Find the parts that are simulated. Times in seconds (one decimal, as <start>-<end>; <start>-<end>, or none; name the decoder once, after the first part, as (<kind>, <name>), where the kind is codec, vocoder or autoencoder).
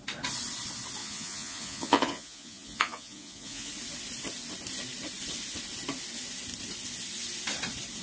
1.0-3.7 (vocoder, Vocos)